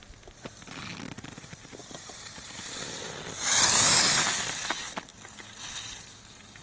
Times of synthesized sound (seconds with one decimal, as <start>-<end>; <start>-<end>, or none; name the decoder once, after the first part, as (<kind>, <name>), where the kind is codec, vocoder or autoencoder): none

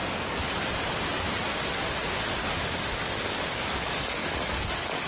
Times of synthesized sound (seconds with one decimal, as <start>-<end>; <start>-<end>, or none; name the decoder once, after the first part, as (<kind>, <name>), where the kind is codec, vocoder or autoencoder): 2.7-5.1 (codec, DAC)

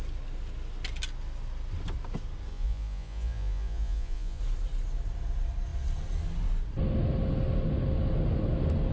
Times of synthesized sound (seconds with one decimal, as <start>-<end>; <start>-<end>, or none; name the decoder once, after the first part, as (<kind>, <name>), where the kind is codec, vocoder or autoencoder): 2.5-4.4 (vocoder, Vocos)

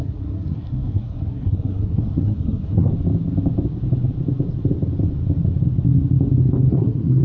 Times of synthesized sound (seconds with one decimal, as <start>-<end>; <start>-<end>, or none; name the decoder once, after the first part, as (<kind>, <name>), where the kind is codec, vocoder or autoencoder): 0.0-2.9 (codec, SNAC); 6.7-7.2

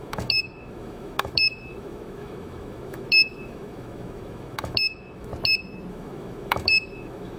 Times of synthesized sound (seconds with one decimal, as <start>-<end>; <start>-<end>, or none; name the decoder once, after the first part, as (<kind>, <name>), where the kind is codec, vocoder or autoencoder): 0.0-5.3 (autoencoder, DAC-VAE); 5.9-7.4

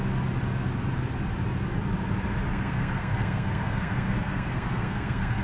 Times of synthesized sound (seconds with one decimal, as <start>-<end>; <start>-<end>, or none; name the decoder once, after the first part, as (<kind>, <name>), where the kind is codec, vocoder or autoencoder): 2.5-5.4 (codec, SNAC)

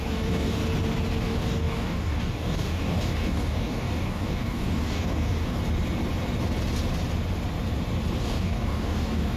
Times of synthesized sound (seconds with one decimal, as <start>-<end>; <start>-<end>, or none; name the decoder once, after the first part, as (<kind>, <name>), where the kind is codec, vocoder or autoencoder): 0.0-0.6 (codec, DAC); 1.2-5.6; 8.2-9.4